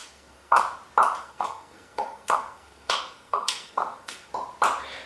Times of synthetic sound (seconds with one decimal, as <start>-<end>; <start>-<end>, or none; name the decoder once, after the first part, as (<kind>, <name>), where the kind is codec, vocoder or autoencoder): 0.0-0.6 (codec, SNAC); 1.2-4.3